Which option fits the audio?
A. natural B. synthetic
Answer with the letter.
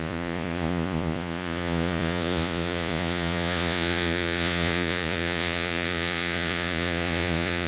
B